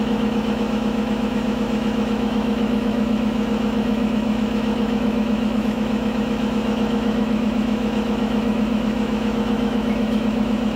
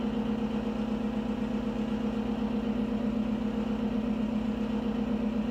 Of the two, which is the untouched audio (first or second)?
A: second